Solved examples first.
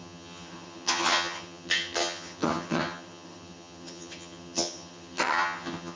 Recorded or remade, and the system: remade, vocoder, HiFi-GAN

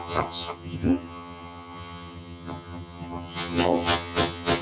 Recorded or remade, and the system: remade, vocoder, HiFi-GAN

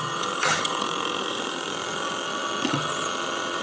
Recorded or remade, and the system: remade, vocoder, HiFi-GAN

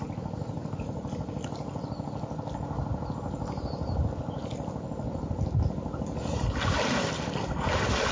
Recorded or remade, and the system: recorded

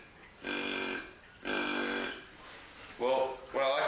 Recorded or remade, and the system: recorded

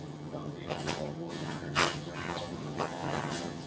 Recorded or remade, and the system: remade, vocoder, HiFi-GAN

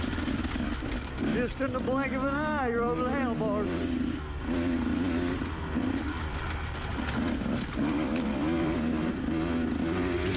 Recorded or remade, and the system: recorded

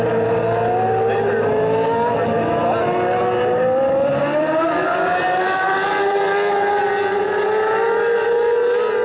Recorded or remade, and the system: recorded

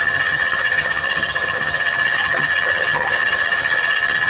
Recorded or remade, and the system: remade, vocoder, HiFi-GAN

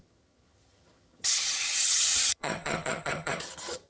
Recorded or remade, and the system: remade, vocoder, HiFi-GAN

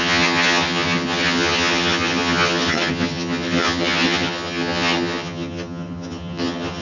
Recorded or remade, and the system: remade, vocoder, HiFi-GAN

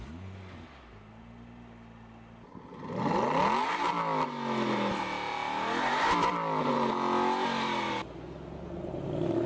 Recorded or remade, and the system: recorded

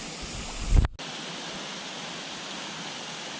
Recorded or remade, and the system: recorded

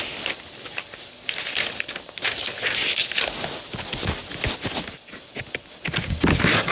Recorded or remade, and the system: recorded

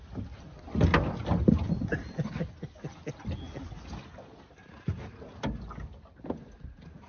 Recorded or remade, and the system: recorded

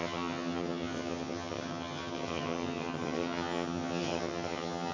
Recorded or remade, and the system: remade, vocoder, HiFi-GAN